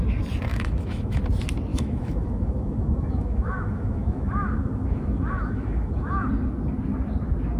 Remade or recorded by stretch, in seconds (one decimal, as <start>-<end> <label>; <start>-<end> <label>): 0.0-0.5 recorded; 0.5-1.2 remade; 1.2-1.7 recorded; 1.7-6.3 remade; 6.3-7.6 recorded